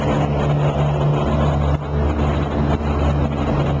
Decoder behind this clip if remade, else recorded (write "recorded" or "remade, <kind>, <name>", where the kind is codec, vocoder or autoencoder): recorded